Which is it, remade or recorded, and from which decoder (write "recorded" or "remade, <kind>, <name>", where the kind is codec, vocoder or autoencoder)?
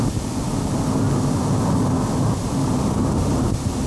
recorded